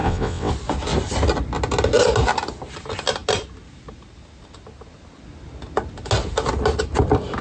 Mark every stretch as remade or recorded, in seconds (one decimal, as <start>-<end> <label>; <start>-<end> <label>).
0.0-0.5 remade; 0.5-7.4 recorded